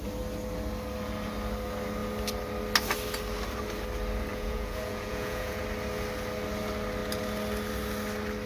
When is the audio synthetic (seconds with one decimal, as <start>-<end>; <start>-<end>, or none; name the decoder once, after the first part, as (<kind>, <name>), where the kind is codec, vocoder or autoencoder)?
4.3-5.6 (vocoder, Vocos)